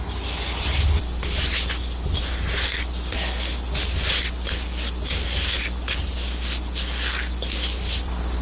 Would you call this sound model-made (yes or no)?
no